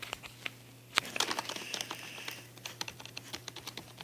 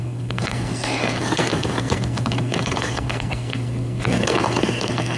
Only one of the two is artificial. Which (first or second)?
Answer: second